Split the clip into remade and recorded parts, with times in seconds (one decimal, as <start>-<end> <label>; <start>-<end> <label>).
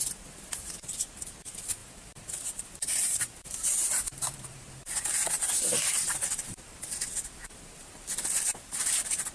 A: 0.0-1.8 recorded; 1.8-7.0 remade; 7.0-8.5 recorded; 8.5-9.3 remade